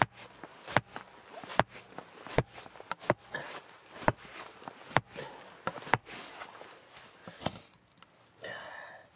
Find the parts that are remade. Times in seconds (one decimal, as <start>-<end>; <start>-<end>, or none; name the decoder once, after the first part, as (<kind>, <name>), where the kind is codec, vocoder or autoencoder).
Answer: none